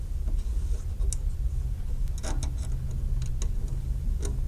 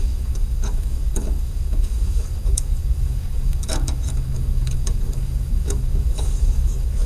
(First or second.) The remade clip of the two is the second